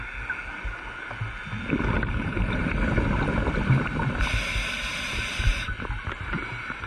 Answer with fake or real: real